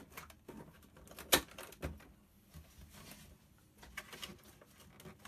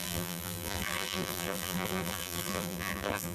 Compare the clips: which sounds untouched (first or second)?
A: first